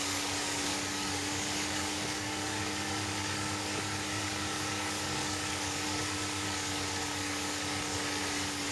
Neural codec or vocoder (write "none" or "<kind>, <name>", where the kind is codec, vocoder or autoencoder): codec, DAC